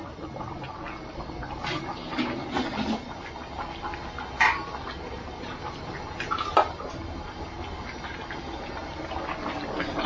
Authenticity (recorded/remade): recorded